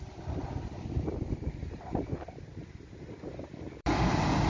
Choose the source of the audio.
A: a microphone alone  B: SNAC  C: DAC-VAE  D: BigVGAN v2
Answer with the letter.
D